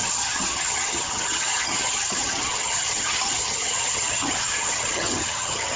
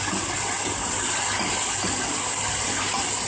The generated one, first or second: first